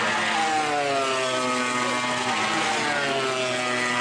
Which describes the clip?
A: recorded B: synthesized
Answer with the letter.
A